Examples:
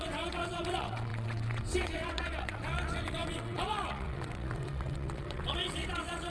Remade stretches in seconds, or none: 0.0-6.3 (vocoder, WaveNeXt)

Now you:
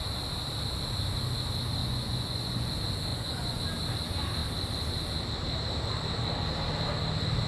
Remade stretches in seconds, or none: 1.8-2.7 (vocoder, Vocos); 3.1-3.6

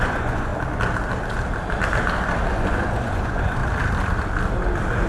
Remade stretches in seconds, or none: 0.0-0.5 (vocoder, Vocos); 2.5-3.6

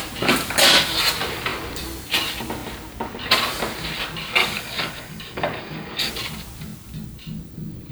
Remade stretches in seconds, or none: 4.4-6.1 (codec, DAC)

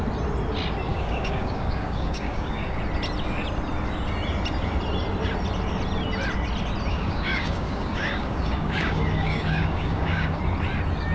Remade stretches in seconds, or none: 0.9-2.8 (codec, DAC); 6.9-10.4